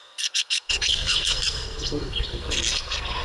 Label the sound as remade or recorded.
remade